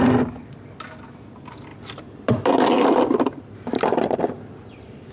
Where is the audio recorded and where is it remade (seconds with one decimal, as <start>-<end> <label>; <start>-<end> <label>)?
0.0-1.7 recorded; 1.7-5.1 remade